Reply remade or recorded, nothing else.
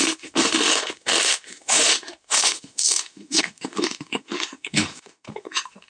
remade